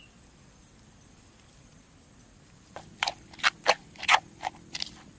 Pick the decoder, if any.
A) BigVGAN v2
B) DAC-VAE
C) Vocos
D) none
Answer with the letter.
D